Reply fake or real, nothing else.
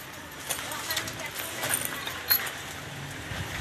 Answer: real